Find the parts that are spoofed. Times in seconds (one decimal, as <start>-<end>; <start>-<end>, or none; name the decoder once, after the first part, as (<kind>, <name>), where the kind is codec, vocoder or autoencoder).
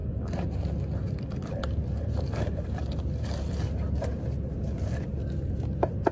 1.1-6.1 (vocoder, BigVGAN v2)